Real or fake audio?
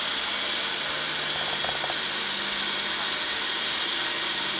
real